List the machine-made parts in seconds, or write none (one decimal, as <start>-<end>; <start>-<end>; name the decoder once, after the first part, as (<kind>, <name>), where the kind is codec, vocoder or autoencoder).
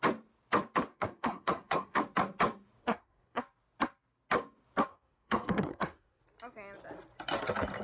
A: 0.9-2.0 (codec, SNAC); 2.8-3.4; 4.9-6.2